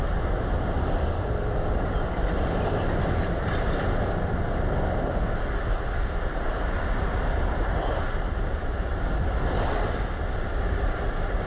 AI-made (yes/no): no